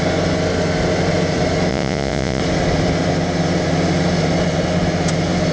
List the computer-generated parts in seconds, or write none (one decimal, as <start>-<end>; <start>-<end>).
1.7-2.4